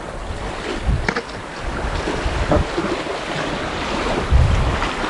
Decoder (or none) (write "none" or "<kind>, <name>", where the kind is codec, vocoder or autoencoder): none